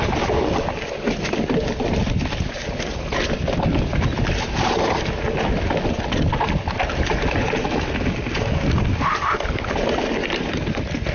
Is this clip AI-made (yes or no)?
no